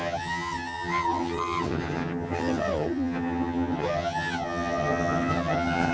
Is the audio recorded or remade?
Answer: remade